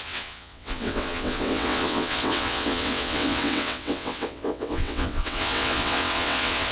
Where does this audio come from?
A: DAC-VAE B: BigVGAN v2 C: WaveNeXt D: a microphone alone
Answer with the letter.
C